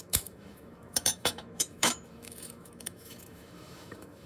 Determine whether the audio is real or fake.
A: fake